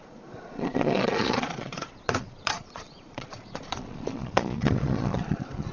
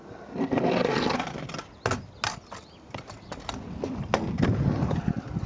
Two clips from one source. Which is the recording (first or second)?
second